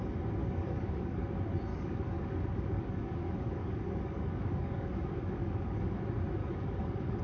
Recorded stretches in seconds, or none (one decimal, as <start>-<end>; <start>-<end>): 0.0-0.4; 1.2-1.7; 6.0-6.4